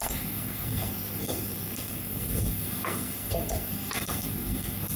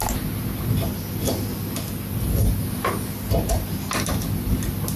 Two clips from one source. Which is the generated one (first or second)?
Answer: first